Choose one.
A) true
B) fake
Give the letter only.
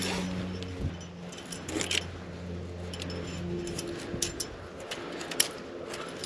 A